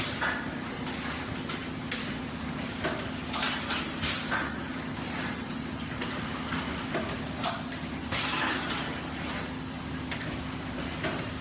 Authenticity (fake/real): real